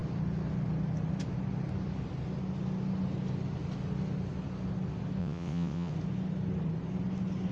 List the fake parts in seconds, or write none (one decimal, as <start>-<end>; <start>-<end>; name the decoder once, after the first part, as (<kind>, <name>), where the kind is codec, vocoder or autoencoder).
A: 5.2-5.9 (vocoder, WaveNeXt)